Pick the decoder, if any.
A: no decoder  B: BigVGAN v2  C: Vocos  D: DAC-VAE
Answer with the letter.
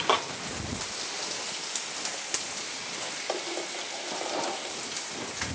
A